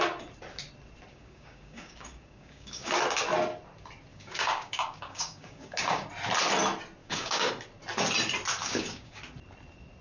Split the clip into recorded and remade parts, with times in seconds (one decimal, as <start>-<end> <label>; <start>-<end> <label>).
0.0-1.1 recorded; 1.1-2.9 remade; 2.9-4.1 recorded; 4.1-6.1 remade; 6.1-7.0 recorded; 7.0-7.5 remade; 7.5-8.6 recorded; 8.6-9.2 remade; 9.2-10.0 recorded